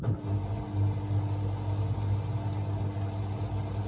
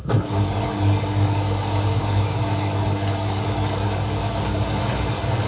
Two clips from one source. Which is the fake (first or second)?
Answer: second